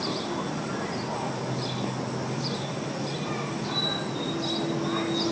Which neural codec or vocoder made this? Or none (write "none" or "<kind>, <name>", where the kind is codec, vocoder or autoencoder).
none